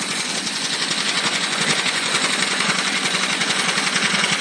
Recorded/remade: remade